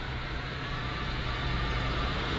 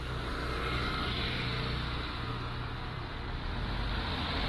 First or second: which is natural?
second